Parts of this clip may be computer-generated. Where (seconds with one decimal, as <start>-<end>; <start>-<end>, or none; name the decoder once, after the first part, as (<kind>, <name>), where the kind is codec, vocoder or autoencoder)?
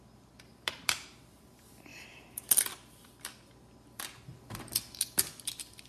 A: 1.9-2.6 (vocoder, BigVGAN v2)